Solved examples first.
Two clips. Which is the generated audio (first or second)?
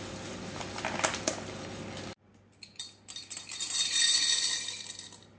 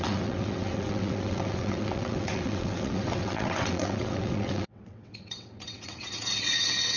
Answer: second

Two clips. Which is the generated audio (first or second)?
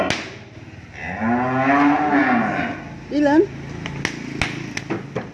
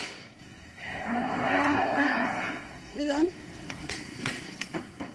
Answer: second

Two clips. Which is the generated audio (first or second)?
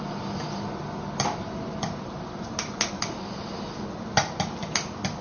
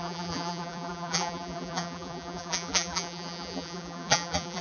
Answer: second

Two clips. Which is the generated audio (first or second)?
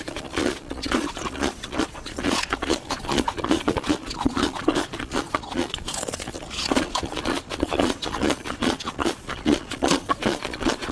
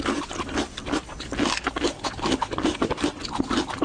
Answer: first